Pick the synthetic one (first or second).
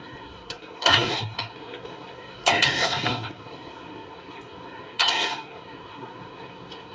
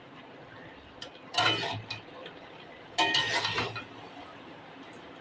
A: first